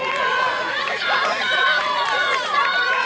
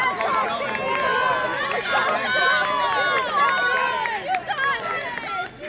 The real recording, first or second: second